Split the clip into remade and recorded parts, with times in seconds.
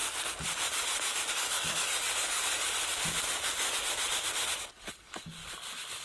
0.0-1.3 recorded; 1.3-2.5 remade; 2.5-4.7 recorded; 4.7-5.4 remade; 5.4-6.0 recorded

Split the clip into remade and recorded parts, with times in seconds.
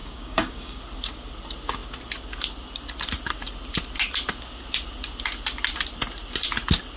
0.0-0.8 remade; 0.8-7.0 recorded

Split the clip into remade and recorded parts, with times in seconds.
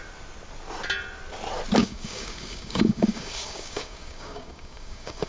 0.0-1.8 recorded; 1.8-5.3 remade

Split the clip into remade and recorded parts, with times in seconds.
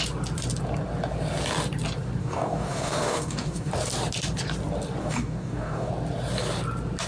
0.0-2.2 recorded; 2.2-3.7 remade; 3.7-5.0 recorded; 5.0-5.9 remade; 5.9-7.1 recorded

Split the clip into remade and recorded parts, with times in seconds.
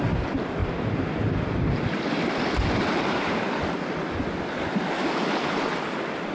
0.0-6.3 recorded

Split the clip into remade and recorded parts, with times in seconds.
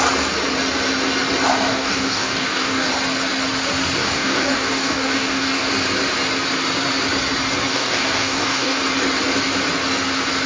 0.0-1.7 recorded; 1.7-2.9 remade; 2.9-4.0 recorded; 4.0-5.7 remade; 5.7-7.7 recorded; 7.7-8.8 remade; 8.8-10.5 recorded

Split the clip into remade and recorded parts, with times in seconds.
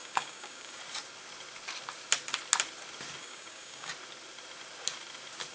0.0-0.8 remade; 0.8-3.2 recorded; 3.2-3.9 remade; 3.9-5.5 recorded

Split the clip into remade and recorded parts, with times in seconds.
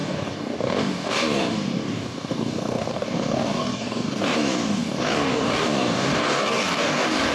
0.0-7.3 remade